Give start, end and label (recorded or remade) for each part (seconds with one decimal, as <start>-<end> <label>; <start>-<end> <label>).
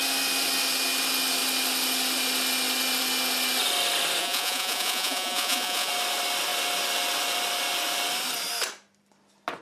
0.0-4.2 recorded; 4.2-5.9 remade; 5.9-9.6 recorded